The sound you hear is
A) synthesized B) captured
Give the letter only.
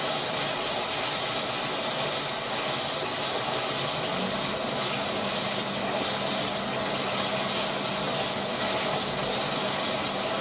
B